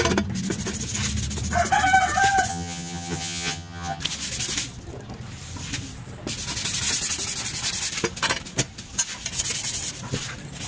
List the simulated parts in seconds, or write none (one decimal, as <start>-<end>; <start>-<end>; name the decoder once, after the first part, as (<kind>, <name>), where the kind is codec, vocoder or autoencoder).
2.5-4.0 (vocoder, HiFi-GAN)